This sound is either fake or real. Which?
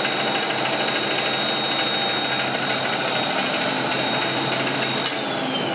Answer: real